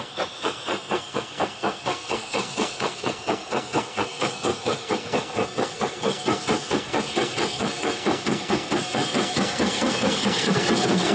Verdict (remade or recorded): remade